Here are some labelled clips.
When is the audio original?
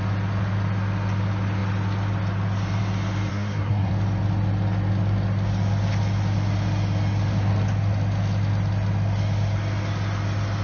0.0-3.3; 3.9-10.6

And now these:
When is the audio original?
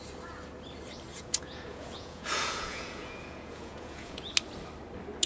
0.0-1.1; 4.3-5.3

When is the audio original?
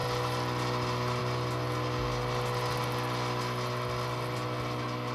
0.0-5.1